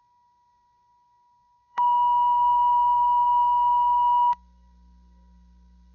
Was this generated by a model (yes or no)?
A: yes